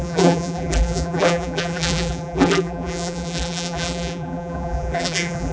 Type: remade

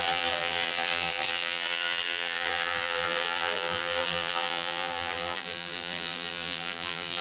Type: remade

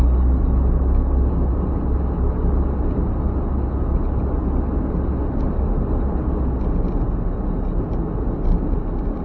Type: recorded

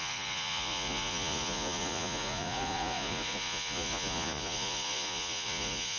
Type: remade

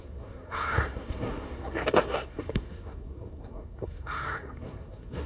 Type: remade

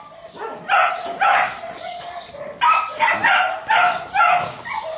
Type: recorded